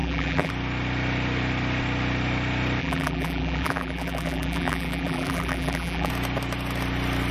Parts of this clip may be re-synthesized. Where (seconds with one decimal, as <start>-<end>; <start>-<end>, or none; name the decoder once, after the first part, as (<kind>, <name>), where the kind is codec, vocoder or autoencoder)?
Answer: 0.0-0.5 (vocoder, BigVGAN v2); 2.8-6.1